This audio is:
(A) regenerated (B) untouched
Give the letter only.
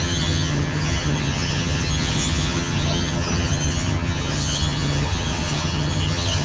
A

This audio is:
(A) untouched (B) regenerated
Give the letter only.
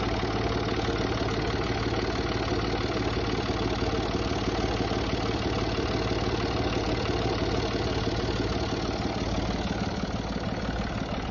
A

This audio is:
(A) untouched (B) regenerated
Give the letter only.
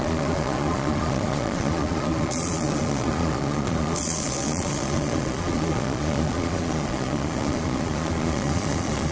B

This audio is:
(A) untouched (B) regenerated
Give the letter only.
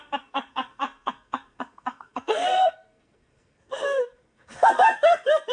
B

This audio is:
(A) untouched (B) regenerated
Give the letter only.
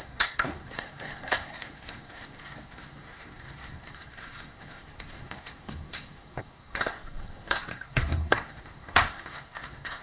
B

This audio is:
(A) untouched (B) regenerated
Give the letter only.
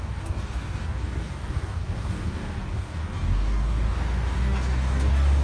B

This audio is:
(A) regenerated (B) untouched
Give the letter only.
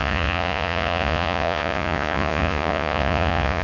A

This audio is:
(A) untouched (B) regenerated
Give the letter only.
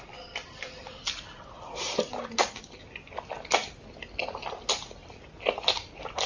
A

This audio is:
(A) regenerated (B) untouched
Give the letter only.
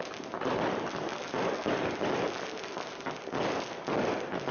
B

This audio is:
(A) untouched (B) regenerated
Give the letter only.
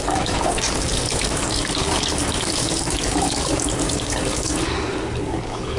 B